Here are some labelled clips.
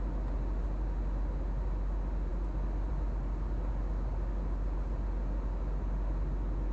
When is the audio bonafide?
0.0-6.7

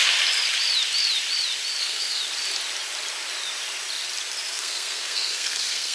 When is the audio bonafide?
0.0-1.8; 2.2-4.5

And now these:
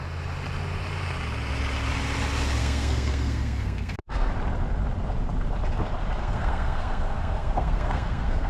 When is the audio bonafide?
0.0-2.6; 4.3-6.2

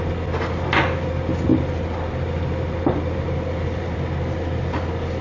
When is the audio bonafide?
0.0-5.2

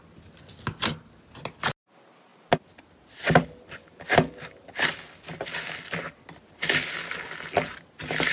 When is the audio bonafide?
0.0-8.3

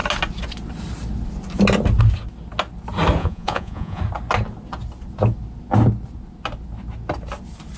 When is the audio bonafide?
0.0-3.2; 4.0-7.8